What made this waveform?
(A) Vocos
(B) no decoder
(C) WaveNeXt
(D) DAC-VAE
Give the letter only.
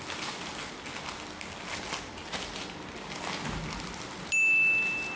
B